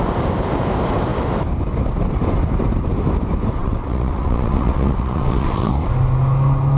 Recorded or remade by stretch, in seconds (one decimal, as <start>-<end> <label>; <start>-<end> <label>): 0.0-3.6 recorded; 3.6-5.7 remade; 5.7-6.8 recorded